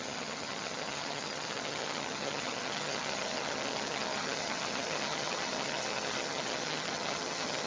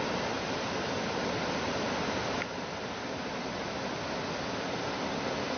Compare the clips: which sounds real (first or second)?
second